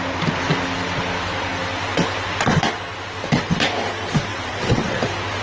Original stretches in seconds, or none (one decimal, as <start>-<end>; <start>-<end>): 0.0-4.3; 5.0-5.4